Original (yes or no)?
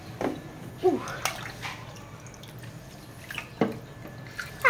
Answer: yes